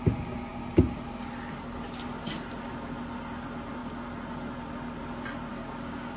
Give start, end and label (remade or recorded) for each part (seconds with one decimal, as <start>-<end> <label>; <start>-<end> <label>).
0.0-5.5 recorded; 5.5-6.2 remade